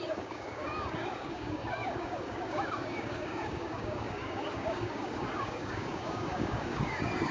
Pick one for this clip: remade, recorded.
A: remade